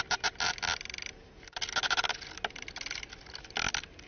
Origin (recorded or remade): recorded